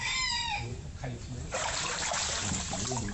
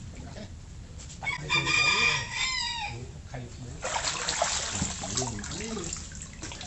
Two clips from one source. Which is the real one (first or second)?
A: second